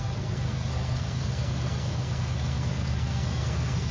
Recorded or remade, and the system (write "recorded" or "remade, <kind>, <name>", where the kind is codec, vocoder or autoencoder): remade, codec, SNAC